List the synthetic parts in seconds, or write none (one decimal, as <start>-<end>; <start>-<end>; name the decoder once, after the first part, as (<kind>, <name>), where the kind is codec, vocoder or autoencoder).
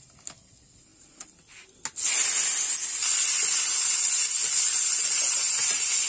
none